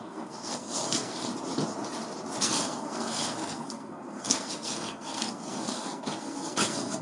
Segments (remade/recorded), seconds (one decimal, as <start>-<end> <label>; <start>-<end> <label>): 0.0-1.3 remade; 1.3-2.4 recorded; 2.4-7.0 remade